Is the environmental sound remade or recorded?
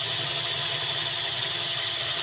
remade